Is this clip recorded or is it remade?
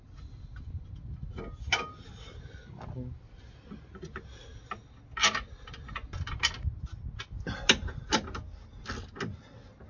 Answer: recorded